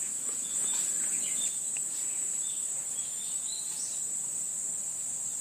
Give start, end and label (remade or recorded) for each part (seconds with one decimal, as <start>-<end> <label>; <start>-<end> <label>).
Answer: 0.0-3.0 recorded; 3.0-3.6 remade; 3.6-5.4 recorded